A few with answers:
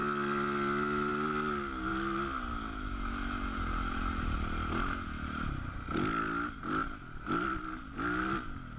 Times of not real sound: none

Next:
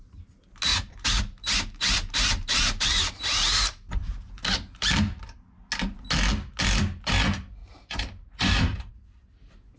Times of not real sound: 0.7-3.2 (vocoder, BigVGAN v2); 4.0-4.9; 7.6-8.9

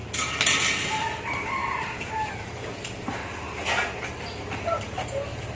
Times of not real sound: 0.8-3.2 (vocoder, BigVGAN v2); 4.8-5.5

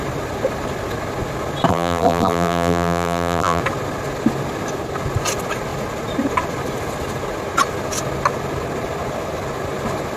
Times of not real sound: 1.7-3.6 (vocoder, BigVGAN v2)

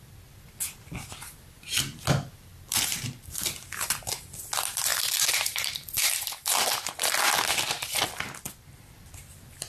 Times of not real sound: 2.5-4.3 (vocoder, BigVGAN v2); 4.9-6.2

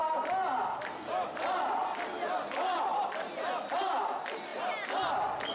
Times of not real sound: none

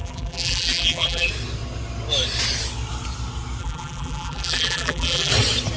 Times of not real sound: 0.0-1.3 (vocoder, BigVGAN v2); 3.6-5.3

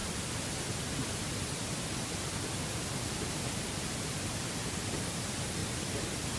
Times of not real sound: 3.8-5.6 (vocoder, BigVGAN v2)